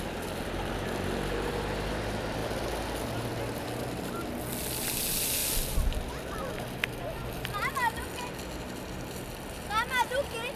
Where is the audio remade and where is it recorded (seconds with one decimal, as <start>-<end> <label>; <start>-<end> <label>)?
0.0-10.6 recorded